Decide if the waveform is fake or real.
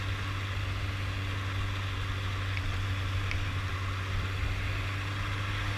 real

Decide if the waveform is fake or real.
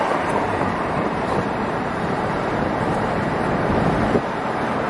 fake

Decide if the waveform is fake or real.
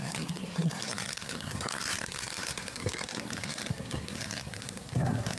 fake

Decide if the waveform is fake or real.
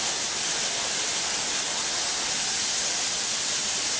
real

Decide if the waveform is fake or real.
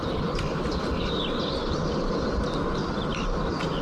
real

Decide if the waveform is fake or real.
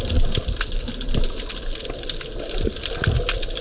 real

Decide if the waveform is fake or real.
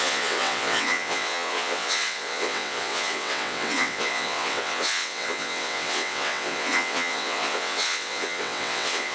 fake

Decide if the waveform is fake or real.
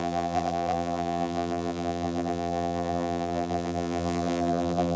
fake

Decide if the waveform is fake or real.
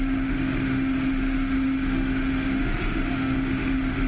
fake